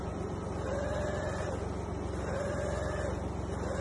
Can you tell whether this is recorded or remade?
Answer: recorded